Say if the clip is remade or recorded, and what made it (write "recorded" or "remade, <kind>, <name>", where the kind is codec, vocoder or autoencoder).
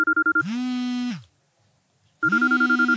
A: recorded